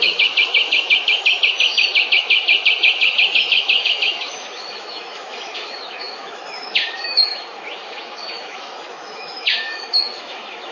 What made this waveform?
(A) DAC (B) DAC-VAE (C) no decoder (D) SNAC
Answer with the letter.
B